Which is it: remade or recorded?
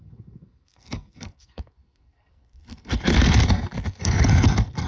remade